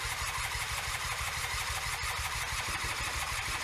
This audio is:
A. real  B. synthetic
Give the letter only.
B